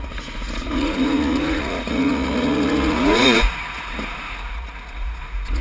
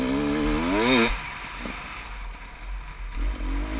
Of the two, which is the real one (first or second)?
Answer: second